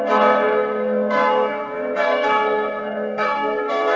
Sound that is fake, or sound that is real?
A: fake